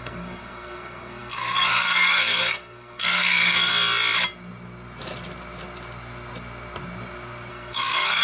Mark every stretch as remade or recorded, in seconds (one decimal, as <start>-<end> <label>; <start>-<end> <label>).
0.0-3.7 remade; 3.7-7.5 recorded; 7.5-8.2 remade